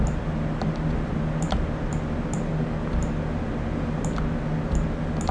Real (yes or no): yes